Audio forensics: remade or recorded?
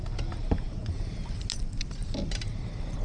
recorded